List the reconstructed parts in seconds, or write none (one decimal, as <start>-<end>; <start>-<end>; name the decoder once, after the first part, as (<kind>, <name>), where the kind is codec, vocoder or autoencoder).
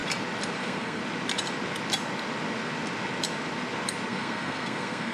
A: 0.6-1.0 (codec, SNAC); 4.1-5.1